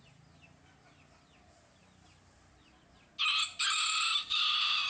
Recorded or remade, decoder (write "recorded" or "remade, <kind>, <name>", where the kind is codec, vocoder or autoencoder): recorded